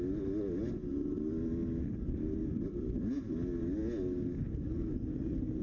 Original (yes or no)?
yes